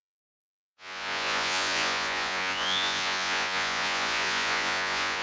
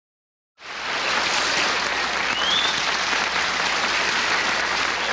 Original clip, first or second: second